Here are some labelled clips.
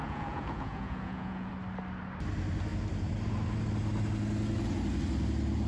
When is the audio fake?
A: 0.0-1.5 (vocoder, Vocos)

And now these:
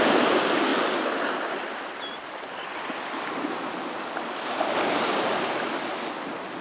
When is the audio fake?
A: none

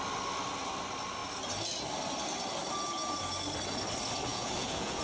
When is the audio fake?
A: 4.3-5.0 (vocoder, Vocos)